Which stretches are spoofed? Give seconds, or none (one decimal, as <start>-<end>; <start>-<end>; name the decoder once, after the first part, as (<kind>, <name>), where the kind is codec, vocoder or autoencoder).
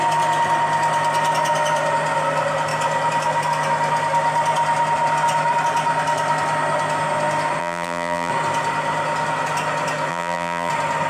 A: 7.6-8.3 (vocoder, BigVGAN v2); 10.1-10.7